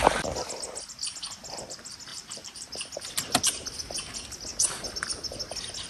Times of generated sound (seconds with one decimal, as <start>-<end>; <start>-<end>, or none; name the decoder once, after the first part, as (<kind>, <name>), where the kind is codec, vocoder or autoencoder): 2.1-2.7 (vocoder, BigVGAN v2)